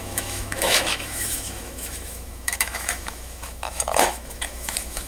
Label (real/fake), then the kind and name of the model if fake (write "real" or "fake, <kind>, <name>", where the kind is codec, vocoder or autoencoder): fake, autoencoder, DAC-VAE